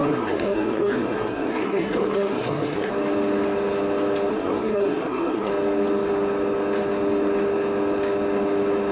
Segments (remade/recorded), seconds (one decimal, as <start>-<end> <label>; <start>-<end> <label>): 0.0-2.9 remade; 2.9-4.3 recorded; 4.3-5.5 remade; 5.5-8.9 recorded